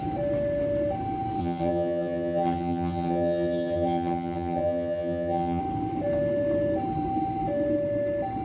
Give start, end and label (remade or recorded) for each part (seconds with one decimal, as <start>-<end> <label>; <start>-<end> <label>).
0.0-1.4 recorded; 1.4-5.6 remade; 5.6-8.4 recorded